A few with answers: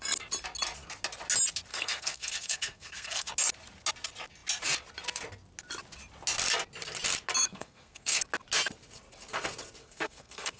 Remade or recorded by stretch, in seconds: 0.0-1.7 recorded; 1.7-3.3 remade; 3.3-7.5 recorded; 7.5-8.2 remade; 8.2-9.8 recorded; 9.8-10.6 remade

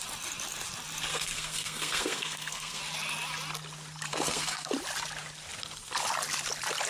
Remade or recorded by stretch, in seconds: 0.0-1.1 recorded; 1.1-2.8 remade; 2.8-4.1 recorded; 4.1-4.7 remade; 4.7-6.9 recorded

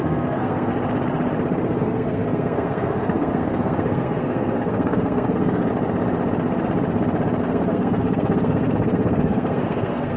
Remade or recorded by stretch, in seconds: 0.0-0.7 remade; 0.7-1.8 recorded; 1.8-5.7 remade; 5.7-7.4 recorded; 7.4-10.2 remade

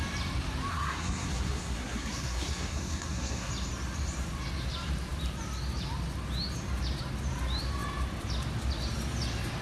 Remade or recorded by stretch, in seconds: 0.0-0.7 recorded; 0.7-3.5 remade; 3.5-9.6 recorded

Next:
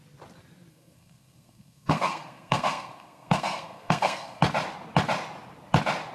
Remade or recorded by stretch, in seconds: 0.0-0.7 recorded; 0.7-4.4 remade; 4.4-6.1 recorded

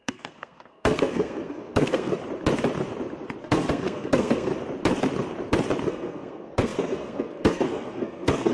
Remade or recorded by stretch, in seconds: 0.0-2.1 remade; 2.1-3.4 recorded; 3.4-4.5 remade; 4.5-5.9 recorded; 5.9-8.5 remade